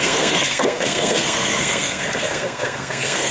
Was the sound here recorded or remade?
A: remade